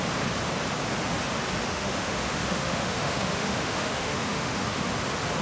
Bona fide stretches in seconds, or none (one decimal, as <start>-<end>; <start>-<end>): 0.0-1.7; 4.9-5.4